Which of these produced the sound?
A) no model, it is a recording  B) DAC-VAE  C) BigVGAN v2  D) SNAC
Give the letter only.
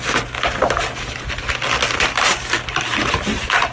A